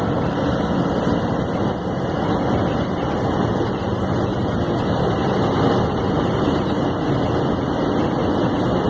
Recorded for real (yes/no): yes